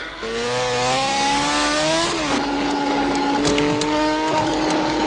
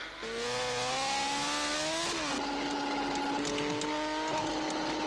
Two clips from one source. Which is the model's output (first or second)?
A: first